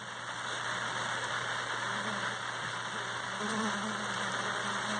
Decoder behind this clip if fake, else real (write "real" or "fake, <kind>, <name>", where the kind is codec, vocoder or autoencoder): fake, vocoder, BigVGAN v2